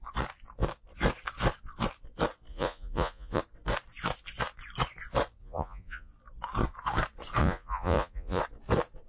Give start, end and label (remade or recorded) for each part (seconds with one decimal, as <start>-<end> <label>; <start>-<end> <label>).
0.0-2.5 recorded; 2.5-3.4 remade; 3.4-5.4 recorded; 5.4-6.1 remade; 6.1-7.4 recorded; 7.4-8.4 remade; 8.4-9.1 recorded